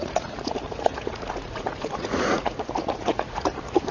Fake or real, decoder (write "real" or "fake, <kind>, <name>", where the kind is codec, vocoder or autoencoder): fake, vocoder, Vocos